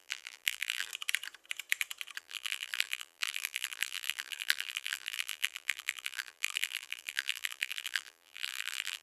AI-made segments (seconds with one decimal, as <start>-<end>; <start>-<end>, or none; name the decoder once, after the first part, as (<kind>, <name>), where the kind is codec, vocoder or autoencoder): 0.0-0.9 (vocoder, BigVGAN v2); 2.2-9.0